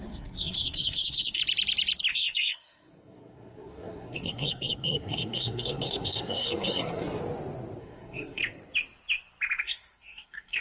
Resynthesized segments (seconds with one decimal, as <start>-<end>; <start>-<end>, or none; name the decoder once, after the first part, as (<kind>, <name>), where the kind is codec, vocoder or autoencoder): 0.0-1.4 (codec, SNAC); 2.1-7.2; 7.8-8.4; 9.6-10.6